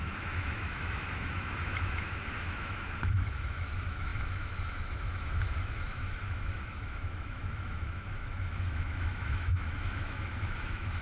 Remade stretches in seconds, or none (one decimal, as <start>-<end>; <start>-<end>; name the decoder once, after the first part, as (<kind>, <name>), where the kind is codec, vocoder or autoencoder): 0.0-11.0 (autoencoder, DAC-VAE)

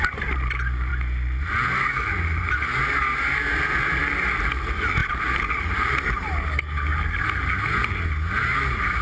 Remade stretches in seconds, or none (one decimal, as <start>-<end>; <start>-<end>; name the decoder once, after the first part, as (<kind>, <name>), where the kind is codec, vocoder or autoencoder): none

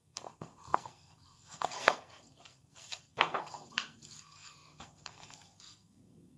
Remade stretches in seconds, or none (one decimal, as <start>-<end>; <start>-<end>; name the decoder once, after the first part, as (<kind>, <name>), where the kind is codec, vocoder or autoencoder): 0.0-6.4 (codec, SNAC)

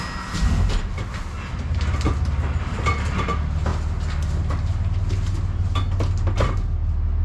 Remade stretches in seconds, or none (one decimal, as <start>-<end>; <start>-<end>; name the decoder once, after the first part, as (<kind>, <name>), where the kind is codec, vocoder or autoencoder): none